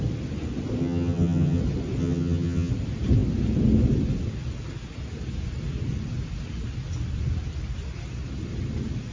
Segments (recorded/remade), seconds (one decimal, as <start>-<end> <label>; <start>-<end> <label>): 0.0-0.8 recorded; 0.8-1.6 remade; 1.6-2.0 recorded; 2.0-2.7 remade; 2.7-9.1 recorded